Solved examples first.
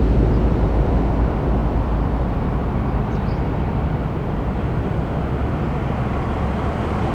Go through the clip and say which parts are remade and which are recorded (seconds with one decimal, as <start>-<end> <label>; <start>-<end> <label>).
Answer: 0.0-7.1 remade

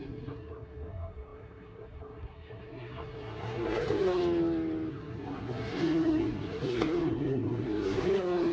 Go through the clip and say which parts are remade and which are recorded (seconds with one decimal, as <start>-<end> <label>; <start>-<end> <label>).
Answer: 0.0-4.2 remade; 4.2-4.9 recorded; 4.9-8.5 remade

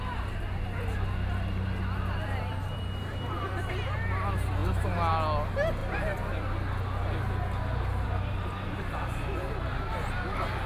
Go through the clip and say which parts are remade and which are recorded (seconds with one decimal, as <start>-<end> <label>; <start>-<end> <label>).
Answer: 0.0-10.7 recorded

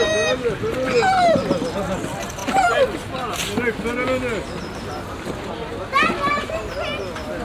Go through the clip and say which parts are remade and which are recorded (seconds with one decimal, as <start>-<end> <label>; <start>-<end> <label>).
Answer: 0.0-7.4 recorded